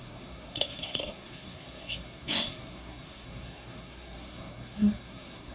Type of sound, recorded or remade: remade